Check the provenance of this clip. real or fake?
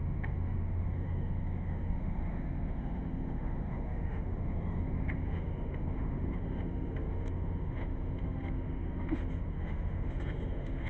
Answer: fake